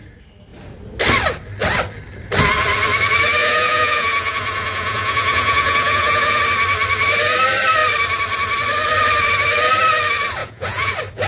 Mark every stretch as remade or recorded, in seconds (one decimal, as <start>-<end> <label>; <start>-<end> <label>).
0.0-3.4 recorded; 3.4-6.4 remade; 6.4-10.4 recorded; 10.4-10.9 remade; 10.9-11.3 recorded